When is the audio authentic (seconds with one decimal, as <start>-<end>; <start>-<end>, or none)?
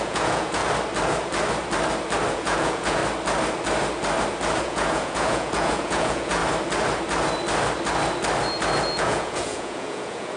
0.6-2.3; 3.0-4.6; 6.4-9.0